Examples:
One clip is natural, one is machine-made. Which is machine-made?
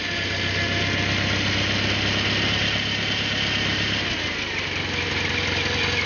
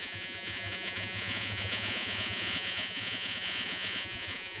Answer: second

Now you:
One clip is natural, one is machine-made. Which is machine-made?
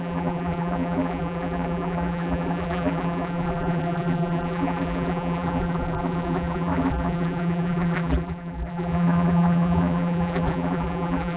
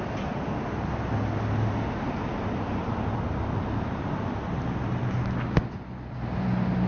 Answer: first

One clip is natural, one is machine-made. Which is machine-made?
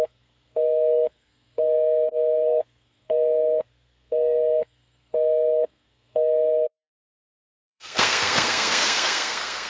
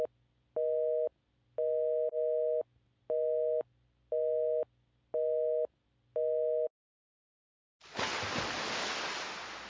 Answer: first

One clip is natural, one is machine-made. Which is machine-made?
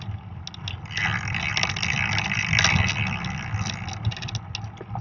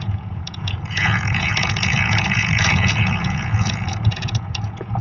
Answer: second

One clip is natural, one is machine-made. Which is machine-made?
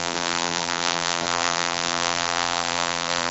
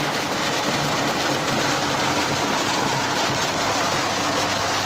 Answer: first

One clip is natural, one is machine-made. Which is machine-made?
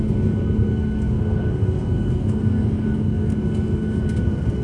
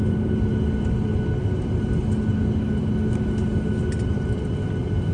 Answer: first